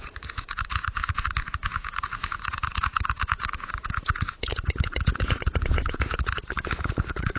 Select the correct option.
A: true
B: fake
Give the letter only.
B